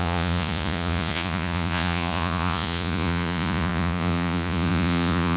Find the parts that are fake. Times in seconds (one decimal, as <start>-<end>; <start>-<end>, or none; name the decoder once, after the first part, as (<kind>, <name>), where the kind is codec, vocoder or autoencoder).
0.0-5.4 (vocoder, Vocos)